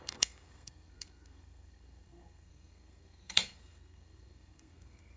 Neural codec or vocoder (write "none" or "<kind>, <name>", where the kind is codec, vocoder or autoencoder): codec, SNAC